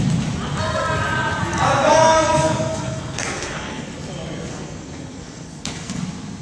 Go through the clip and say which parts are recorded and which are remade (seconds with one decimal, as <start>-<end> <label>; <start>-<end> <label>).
0.0-2.0 recorded; 2.0-3.9 remade; 3.9-4.5 recorded; 4.5-6.0 remade; 6.0-6.4 recorded